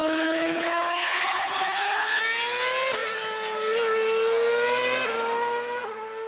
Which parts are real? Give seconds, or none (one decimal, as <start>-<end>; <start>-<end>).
2.2-6.3